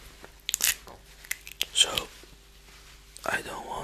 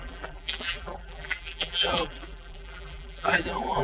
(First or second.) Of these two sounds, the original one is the first